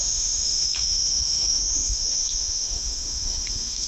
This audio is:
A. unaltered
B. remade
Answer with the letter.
B